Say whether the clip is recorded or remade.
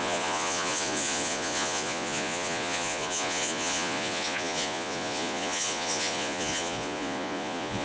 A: remade